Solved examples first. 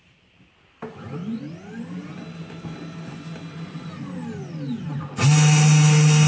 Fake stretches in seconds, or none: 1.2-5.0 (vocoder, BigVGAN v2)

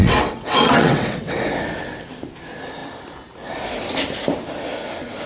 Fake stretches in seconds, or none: 0.0-1.5 (vocoder, WaveNeXt)